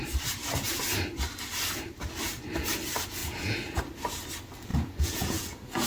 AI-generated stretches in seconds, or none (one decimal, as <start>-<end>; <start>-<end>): 3.2-3.8; 4.7-5.9